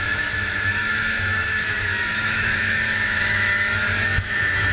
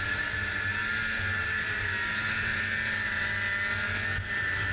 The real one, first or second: second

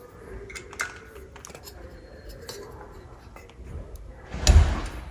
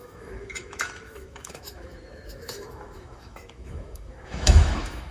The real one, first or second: first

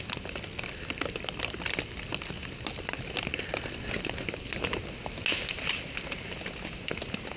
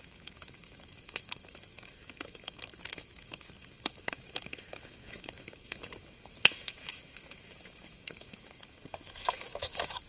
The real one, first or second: first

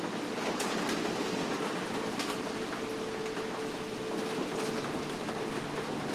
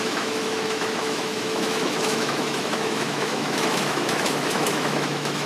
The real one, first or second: first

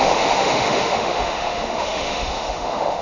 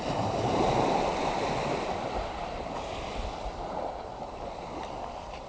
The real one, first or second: second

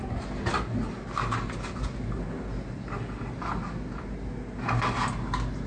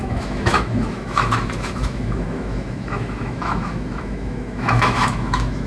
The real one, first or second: first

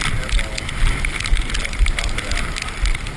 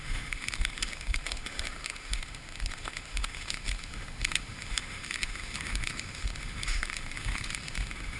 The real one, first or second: first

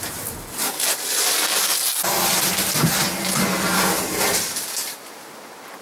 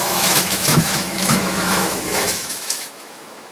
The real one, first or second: first